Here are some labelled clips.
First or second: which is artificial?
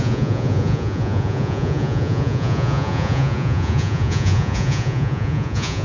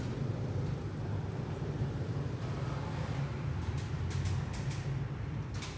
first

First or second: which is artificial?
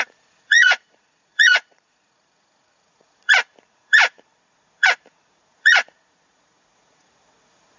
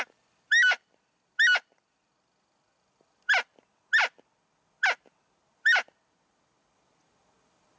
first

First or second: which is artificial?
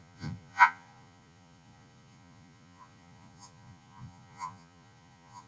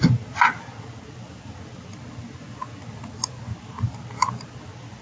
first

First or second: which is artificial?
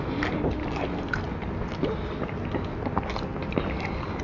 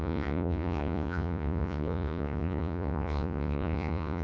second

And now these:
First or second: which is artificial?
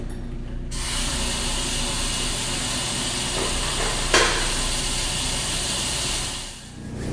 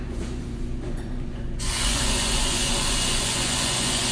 second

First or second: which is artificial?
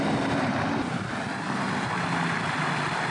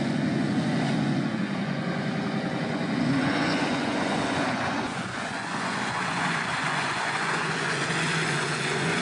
second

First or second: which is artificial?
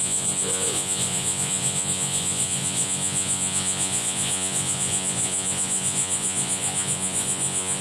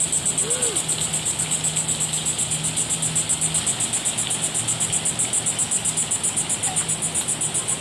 first